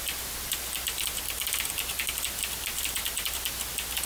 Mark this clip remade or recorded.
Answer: recorded